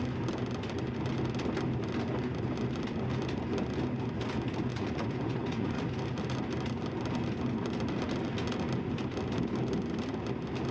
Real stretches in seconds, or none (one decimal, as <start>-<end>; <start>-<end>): 0.0-4.7; 5.8-10.7